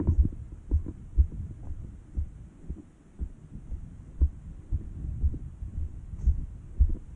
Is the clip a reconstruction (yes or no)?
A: no